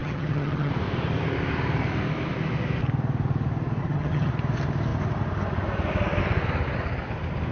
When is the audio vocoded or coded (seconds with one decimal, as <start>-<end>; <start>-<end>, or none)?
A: 0.0-0.7; 3.8-4.3